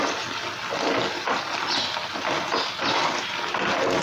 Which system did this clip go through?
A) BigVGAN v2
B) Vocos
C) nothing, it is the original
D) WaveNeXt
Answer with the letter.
C